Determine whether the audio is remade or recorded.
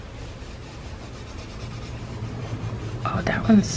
recorded